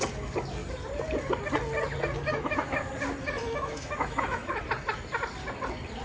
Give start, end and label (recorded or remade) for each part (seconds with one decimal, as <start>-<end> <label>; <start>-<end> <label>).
0.0-2.3 recorded; 2.3-2.9 remade; 2.9-3.4 recorded; 3.4-4.6 remade; 4.6-6.0 recorded